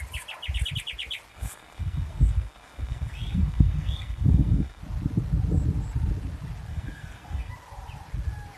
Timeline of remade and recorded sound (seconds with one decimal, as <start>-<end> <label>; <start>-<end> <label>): 0.0-1.3 recorded; 1.3-4.8 remade; 4.8-6.7 recorded; 6.7-7.5 remade; 7.5-8.6 recorded